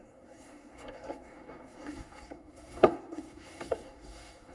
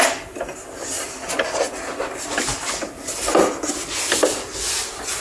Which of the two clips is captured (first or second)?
second